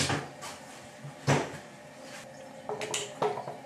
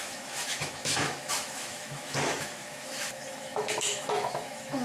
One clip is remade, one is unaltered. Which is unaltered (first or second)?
first